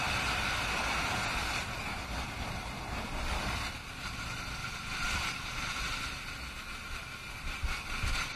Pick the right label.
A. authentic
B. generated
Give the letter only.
A